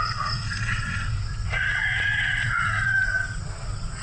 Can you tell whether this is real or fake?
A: fake